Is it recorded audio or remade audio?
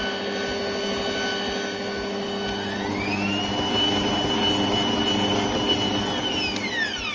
recorded